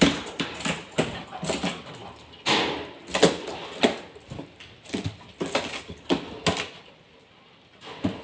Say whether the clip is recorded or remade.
recorded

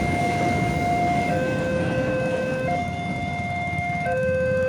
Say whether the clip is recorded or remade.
remade